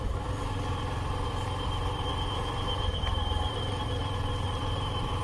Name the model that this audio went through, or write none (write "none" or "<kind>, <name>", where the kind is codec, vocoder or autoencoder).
vocoder, BigVGAN v2